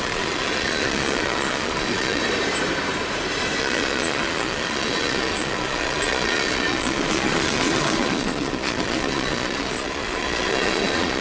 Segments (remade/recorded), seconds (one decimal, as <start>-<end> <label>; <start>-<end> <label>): 0.0-2.2 remade; 2.2-3.6 recorded; 3.6-11.2 remade